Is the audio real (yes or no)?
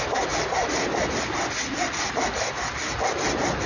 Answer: yes